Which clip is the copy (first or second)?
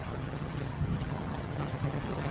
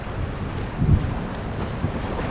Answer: first